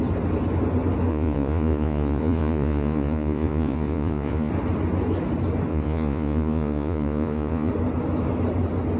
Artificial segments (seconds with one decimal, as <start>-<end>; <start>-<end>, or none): 1.1-4.5; 5.7-7.7